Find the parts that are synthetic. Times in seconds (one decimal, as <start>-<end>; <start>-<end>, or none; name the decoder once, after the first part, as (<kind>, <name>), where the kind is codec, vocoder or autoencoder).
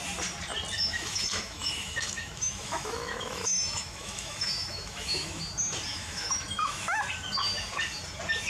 0.9-5.4 (autoencoder, DAC-VAE); 5.9-7.0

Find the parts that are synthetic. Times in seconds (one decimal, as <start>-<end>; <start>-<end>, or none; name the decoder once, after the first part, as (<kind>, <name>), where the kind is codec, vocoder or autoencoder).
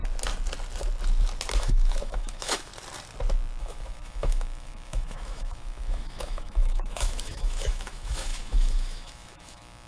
1.6-2.7 (autoencoder, DAC-VAE); 3.6-9.9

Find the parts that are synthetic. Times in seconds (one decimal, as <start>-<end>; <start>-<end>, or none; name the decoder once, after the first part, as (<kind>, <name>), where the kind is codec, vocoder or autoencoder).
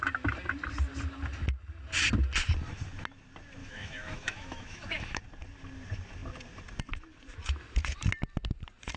3.6-5.2 (autoencoder, DAC-VAE)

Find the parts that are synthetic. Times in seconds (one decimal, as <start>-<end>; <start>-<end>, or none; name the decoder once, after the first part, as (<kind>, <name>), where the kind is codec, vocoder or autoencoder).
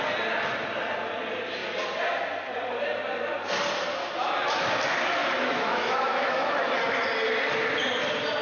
4.0-4.7 (autoencoder, DAC-VAE); 5.2-6.8